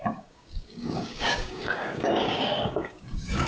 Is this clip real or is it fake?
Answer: fake